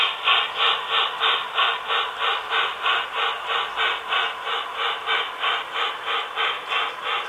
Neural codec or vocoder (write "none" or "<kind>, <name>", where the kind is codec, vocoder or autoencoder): none